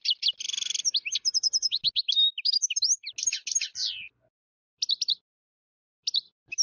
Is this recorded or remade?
recorded